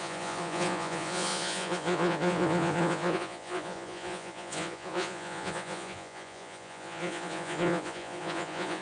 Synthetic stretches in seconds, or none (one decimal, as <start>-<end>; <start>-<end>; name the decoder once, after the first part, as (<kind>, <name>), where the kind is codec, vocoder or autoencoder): 0.0-8.8 (vocoder, Vocos)